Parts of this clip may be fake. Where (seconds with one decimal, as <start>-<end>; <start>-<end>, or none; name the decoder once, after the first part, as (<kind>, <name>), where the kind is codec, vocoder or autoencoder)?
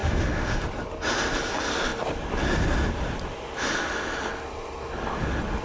0.0-0.6 (autoencoder, DAC-VAE)